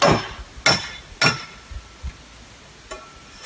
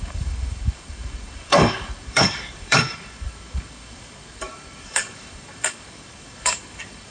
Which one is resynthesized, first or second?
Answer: second